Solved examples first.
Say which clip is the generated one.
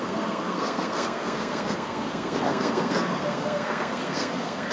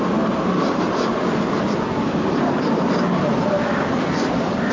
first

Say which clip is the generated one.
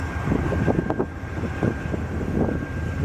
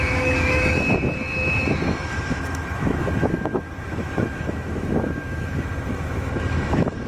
second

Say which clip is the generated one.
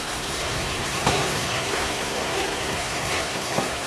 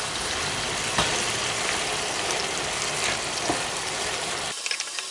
first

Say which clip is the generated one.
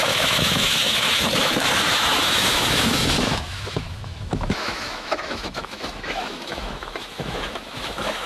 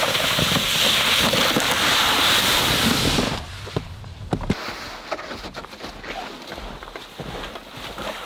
first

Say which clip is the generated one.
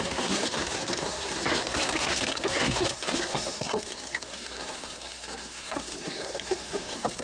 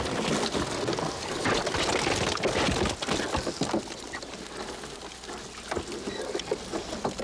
first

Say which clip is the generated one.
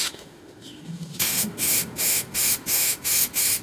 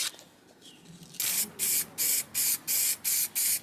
first